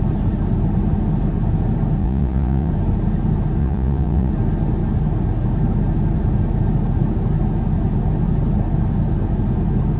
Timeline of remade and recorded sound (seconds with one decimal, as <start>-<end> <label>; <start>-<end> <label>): 0.0-2.0 recorded; 2.0-2.7 remade; 2.7-3.6 recorded; 3.6-4.3 remade; 4.3-10.0 recorded